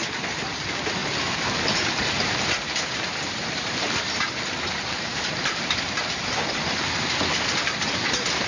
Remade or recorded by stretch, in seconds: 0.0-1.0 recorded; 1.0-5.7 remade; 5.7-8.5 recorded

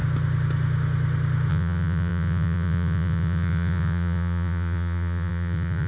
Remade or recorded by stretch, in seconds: 0.0-1.5 recorded; 1.5-5.9 remade

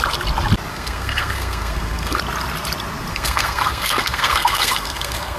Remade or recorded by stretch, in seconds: 0.0-0.7 recorded; 0.7-2.2 remade; 2.2-3.1 recorded; 3.1-5.4 remade

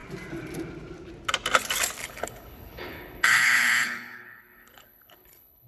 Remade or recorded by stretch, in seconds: 0.0-2.0 recorded; 2.0-5.7 remade

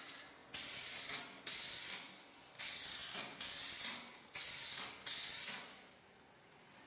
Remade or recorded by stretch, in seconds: 0.0-6.9 recorded